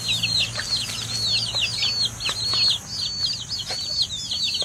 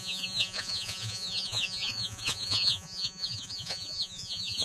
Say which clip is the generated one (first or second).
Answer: second